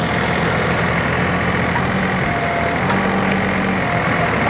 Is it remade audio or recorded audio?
recorded